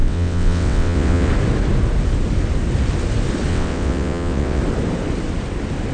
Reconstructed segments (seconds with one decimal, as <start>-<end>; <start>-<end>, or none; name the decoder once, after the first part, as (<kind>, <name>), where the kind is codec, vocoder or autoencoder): 0.0-1.3 (vocoder, WaveNeXt); 3.5-4.6